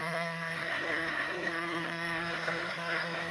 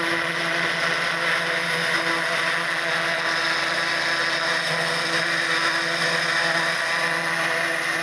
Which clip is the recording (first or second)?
second